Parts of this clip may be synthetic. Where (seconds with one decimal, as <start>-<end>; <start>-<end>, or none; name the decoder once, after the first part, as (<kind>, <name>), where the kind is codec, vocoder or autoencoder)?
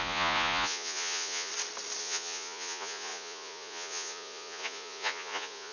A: 0.0-1.5 (vocoder, Vocos); 2.0-5.7